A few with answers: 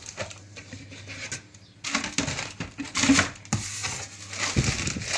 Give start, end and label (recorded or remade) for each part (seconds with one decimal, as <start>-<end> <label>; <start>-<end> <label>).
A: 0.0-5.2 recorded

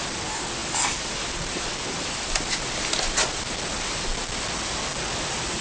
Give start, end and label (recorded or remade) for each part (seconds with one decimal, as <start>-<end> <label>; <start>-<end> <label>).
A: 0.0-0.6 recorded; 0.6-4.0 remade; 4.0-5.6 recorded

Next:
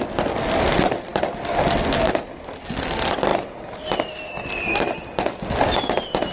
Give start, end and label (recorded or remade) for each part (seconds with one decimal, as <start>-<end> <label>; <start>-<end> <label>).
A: 0.0-6.3 recorded

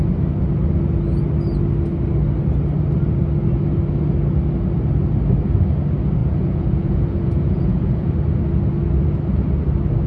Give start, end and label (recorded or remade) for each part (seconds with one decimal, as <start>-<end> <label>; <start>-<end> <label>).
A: 0.0-6.2 recorded; 6.2-8.1 remade; 8.1-10.1 recorded

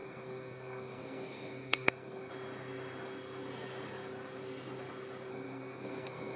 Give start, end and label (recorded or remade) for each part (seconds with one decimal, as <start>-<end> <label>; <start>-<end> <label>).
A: 0.0-2.3 remade; 2.3-5.3 recorded; 5.3-6.4 remade

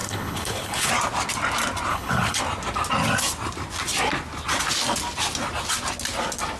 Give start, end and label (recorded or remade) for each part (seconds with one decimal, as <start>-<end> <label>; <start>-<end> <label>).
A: 0.0-0.9 remade; 0.9-1.9 recorded; 1.9-2.4 remade; 2.4-6.6 recorded

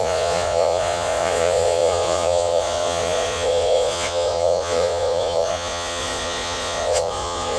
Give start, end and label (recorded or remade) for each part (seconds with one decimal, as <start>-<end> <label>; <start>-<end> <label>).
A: 0.0-7.6 remade